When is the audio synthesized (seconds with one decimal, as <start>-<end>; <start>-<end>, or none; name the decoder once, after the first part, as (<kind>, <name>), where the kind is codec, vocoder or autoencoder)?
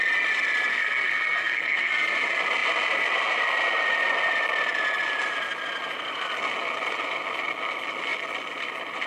0.7-1.9 (codec, SNAC)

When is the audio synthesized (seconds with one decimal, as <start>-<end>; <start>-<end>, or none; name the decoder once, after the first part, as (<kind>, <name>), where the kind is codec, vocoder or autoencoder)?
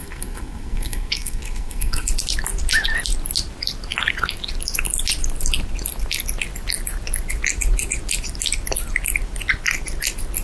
0.0-2.1 (codec, SNAC)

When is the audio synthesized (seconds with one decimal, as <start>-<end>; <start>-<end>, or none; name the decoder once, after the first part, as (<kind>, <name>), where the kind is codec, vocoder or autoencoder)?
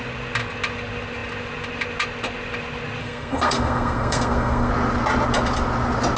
3.0-4.7 (codec, SNAC)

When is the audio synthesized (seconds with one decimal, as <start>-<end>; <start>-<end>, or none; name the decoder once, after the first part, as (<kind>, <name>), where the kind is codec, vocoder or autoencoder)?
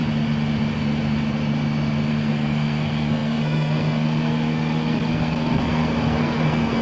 2.1-6.8 (codec, SNAC)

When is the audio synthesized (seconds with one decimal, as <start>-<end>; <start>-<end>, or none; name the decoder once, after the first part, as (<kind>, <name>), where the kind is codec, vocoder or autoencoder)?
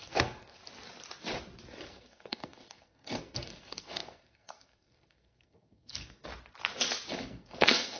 0.0-0.6 (codec, SNAC); 1.8-6.3; 7.1-8.0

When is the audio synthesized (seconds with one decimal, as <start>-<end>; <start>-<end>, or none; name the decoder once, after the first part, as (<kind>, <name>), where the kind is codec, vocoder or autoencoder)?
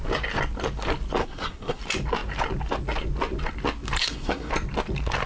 1.2-1.8 (codec, SNAC); 4.0-4.5